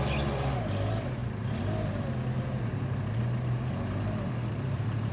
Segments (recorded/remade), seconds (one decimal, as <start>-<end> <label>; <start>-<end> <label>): 0.0-1.2 remade; 1.2-4.3 recorded; 4.3-5.1 remade